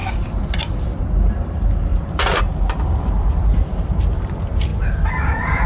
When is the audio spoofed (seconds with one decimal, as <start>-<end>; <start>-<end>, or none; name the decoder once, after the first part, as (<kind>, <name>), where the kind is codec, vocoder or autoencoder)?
0.0-1.0 (vocoder, BigVGAN v2); 1.9-2.4; 3.5-4.2